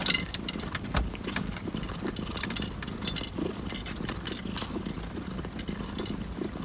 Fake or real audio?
real